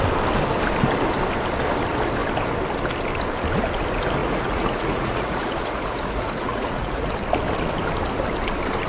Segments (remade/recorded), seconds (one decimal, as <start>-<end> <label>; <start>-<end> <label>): 0.0-4.2 recorded; 4.2-7.1 remade; 7.1-8.9 recorded